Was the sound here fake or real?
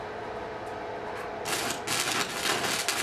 real